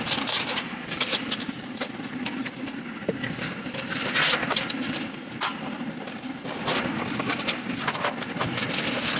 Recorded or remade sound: recorded